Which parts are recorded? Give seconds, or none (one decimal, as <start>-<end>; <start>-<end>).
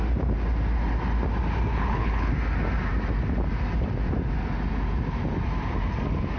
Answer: 0.0-1.7; 2.3-6.4